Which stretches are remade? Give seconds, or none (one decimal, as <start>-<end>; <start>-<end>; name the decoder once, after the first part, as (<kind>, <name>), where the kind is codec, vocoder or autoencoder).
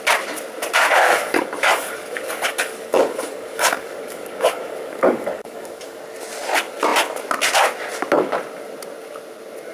1.1-6.0 (codec, DAC)